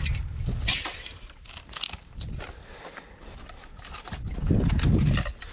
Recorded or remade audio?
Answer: recorded